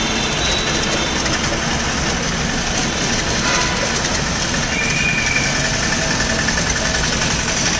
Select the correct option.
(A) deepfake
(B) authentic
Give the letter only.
B